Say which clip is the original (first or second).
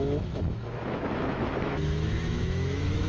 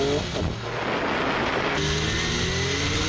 second